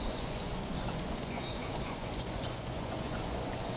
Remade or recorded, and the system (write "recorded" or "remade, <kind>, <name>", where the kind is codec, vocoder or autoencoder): remade, vocoder, Vocos